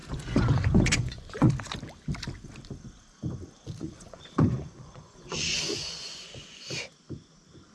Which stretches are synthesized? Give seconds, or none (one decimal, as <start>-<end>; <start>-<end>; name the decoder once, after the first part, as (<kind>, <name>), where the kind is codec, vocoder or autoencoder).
0.0-1.5 (vocoder, Vocos); 3.8-6.7